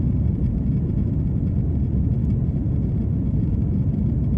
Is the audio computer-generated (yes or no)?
yes